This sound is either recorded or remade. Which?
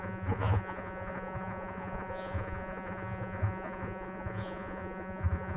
remade